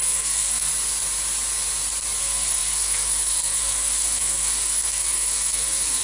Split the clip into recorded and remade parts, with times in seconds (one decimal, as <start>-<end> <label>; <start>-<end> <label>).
0.0-0.7 remade; 0.7-2.2 recorded; 2.2-6.0 remade